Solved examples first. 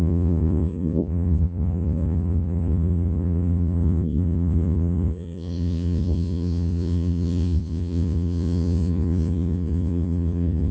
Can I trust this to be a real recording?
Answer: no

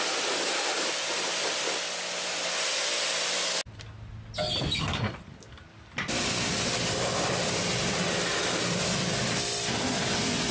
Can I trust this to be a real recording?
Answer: yes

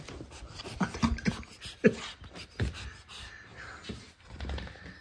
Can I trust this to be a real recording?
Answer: yes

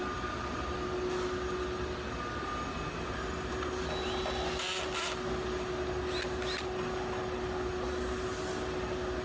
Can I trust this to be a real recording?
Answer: yes